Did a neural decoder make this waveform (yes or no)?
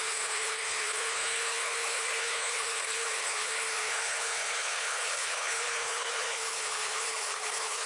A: yes